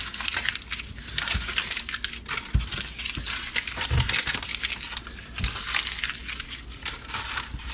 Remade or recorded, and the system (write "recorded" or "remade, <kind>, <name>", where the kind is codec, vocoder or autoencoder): recorded